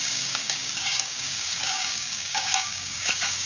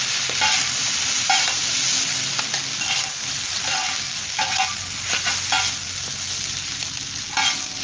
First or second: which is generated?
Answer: first